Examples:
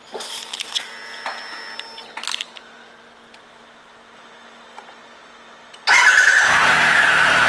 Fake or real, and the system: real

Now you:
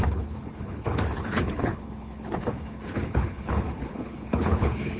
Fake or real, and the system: fake, codec, HILCodec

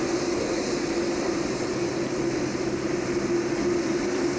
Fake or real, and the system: real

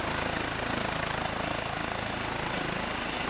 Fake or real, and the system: real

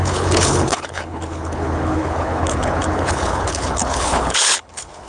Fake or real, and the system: fake, codec, HILCodec